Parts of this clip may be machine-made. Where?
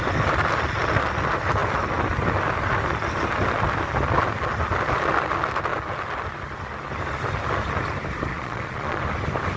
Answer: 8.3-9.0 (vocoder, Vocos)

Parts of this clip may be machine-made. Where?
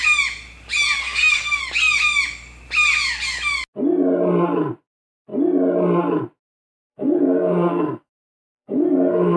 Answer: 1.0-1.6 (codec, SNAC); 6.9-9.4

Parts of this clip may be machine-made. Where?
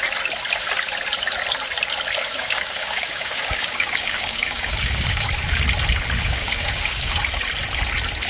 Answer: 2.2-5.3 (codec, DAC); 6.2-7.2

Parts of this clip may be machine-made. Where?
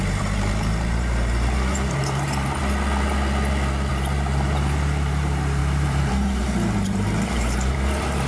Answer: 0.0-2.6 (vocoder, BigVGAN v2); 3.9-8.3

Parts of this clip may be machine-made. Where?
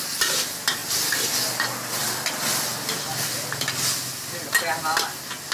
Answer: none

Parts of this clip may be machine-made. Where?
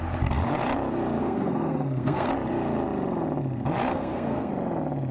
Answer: 1.2-2.3 (codec, SNAC); 3.9-4.5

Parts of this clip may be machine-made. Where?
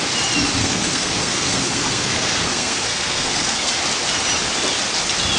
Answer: 0.6-3.8 (codec, SNAC)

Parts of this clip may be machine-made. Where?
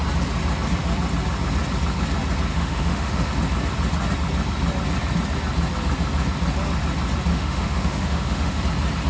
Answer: 2.5-3.3 (autoencoder, DAC-VAE); 7.3-8.6